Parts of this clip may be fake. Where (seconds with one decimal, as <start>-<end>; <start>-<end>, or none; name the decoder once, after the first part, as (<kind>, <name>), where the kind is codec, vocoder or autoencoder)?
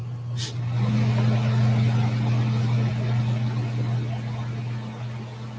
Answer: none